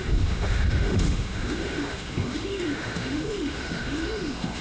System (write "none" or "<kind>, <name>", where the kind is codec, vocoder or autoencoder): autoencoder, DAC-VAE